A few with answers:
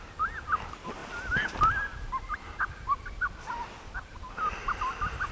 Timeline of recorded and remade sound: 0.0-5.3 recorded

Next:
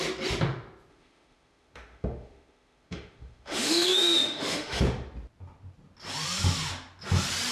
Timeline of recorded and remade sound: 0.0-0.9 recorded; 0.9-4.8 remade; 4.8-7.5 recorded

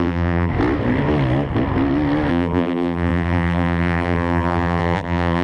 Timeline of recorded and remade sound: 0.0-0.5 remade; 0.5-2.3 recorded; 2.3-5.4 remade

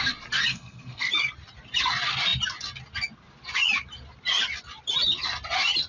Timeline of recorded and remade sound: 0.0-0.5 recorded; 0.5-1.1 remade; 1.1-5.9 recorded

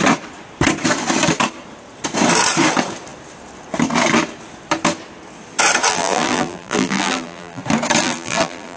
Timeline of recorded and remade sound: 0.0-5.9 recorded; 5.9-7.6 remade; 7.6-8.0 recorded; 8.0-8.8 remade